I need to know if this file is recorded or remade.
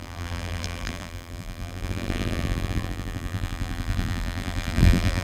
remade